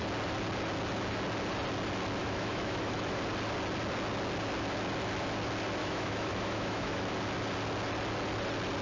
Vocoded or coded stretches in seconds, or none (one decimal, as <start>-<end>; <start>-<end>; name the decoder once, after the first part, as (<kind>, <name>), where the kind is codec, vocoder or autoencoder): 2.2-3.2 (autoencoder, DAC-VAE); 5.8-7.1